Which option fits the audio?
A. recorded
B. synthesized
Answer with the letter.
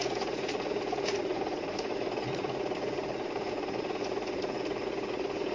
B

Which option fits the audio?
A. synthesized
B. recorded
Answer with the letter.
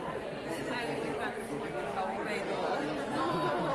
B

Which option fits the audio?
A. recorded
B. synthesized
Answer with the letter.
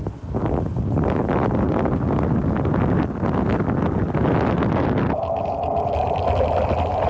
A